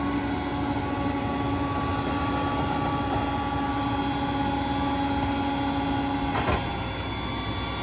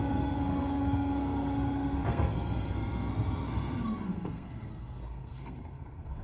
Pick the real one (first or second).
first